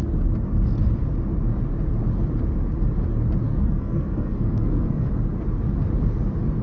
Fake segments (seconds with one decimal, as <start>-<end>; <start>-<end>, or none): 3.5-5.1